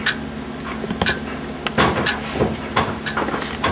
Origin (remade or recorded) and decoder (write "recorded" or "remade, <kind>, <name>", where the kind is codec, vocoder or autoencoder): recorded